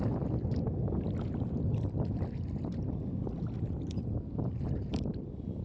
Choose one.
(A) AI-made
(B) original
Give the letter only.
B